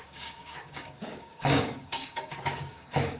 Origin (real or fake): fake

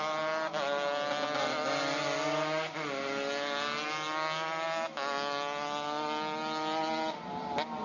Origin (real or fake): real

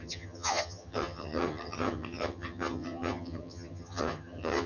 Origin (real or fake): fake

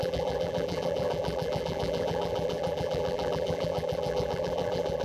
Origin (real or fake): fake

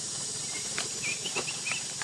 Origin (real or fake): real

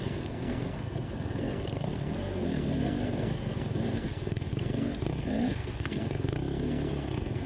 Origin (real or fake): fake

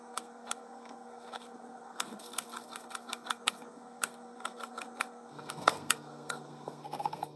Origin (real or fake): fake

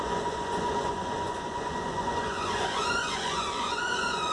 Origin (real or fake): fake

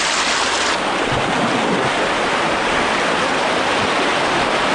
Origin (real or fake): real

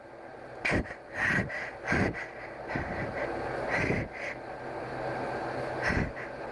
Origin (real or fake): real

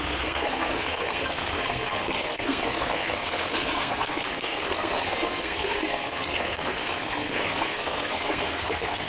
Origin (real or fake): fake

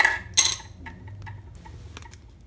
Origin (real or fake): real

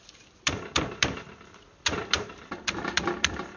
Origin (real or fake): fake